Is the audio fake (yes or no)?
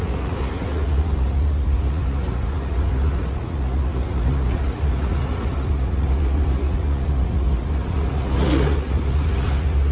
yes